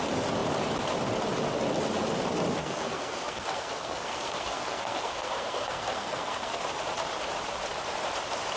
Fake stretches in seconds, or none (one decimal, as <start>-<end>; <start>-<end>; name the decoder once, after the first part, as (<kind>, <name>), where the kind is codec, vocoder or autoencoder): 2.6-6.6 (codec, SNAC)